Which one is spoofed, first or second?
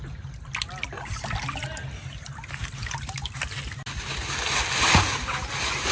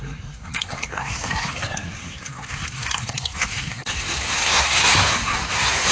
second